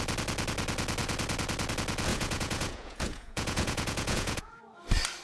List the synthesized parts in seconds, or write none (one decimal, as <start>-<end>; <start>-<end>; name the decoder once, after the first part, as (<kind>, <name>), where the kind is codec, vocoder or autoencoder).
2.1-4.6 (vocoder, Vocos)